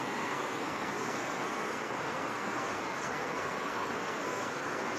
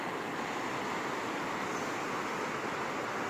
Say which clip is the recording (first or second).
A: second